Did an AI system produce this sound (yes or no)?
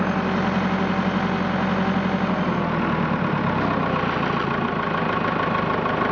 no